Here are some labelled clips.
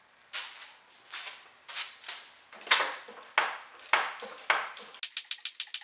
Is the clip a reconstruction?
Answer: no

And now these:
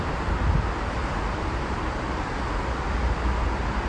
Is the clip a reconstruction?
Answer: no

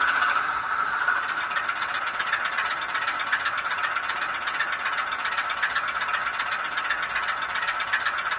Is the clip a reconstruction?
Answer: no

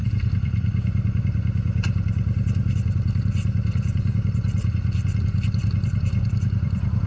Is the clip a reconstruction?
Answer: yes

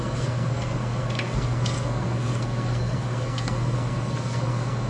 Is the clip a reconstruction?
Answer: yes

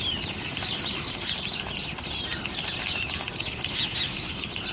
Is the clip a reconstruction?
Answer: no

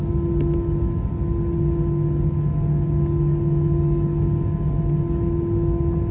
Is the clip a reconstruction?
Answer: no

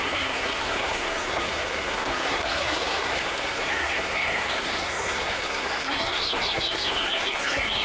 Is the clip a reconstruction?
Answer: yes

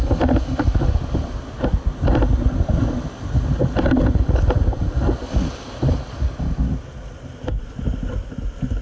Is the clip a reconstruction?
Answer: no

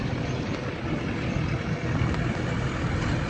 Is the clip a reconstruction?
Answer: no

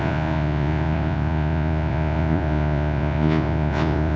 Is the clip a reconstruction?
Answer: yes